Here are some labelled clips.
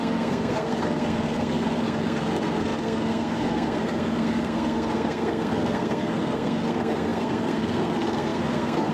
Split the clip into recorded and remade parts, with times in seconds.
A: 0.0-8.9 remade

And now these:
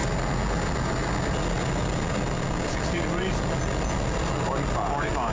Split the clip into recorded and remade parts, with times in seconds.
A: 0.0-5.3 recorded

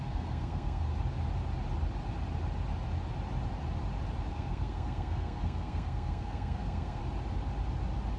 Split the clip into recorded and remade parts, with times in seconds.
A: 0.0-0.9 remade; 0.9-4.3 recorded; 4.3-7.0 remade; 7.0-8.2 recorded

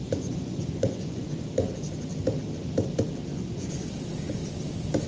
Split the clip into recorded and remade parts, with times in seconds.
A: 0.0-1.4 remade; 1.4-3.3 recorded; 3.3-3.9 remade; 3.9-5.1 recorded

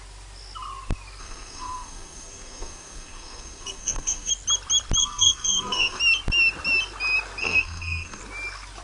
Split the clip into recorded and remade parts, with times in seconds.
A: 0.0-1.2 recorded; 1.2-4.3 remade; 4.3-5.0 recorded; 5.0-6.0 remade; 6.0-7.4 recorded; 7.4-8.2 remade; 8.2-8.8 recorded